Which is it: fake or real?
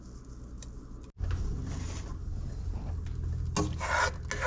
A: real